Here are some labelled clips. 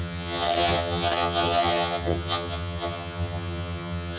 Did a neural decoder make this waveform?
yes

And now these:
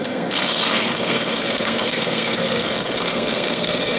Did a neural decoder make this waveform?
yes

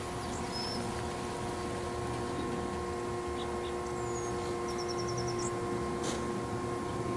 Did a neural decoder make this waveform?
no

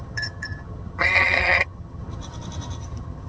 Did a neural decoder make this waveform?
yes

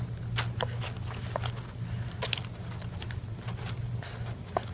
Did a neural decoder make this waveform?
no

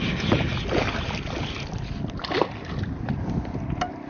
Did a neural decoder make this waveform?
no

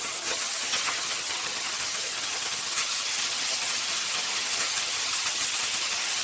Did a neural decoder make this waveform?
yes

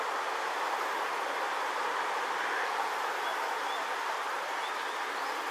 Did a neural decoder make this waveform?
no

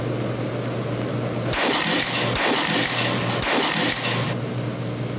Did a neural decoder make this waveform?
no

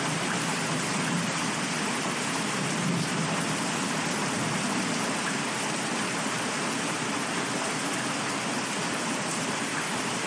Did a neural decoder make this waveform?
no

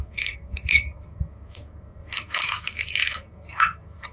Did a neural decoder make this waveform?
yes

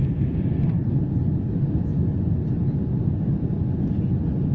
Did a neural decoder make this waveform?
no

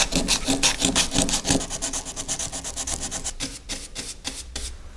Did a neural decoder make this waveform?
no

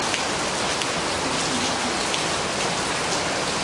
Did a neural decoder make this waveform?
no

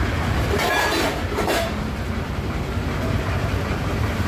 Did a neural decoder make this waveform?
yes